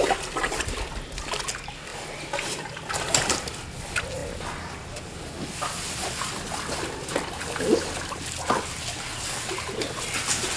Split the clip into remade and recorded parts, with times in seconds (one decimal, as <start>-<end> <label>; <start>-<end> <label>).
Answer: 0.0-10.6 recorded